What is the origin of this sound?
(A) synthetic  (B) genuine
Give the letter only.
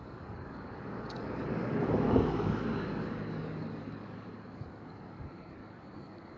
A